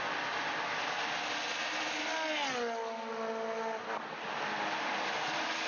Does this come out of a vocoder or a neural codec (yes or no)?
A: no